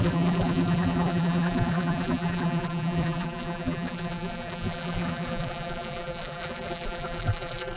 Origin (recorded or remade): remade